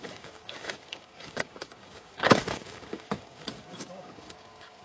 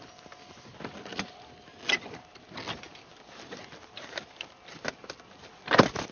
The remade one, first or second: first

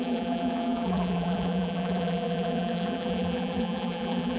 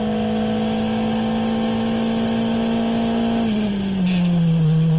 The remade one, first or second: first